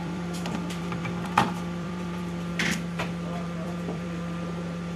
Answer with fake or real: fake